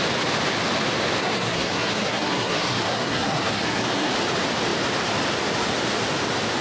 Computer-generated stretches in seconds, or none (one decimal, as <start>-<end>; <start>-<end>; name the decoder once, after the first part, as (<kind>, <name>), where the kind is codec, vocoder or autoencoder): 1.2-4.1 (codec, SNAC)